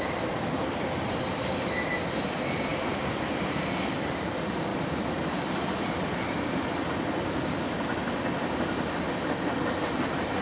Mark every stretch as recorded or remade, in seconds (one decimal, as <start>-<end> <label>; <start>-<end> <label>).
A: 0.0-4.7 recorded; 4.7-6.0 remade; 6.0-10.4 recorded